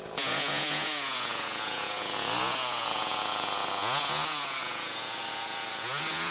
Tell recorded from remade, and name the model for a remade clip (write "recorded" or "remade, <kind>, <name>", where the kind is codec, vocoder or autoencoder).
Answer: remade, vocoder, Vocos